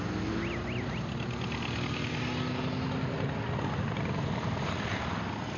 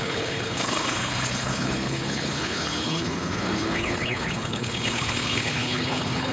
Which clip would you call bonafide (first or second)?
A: first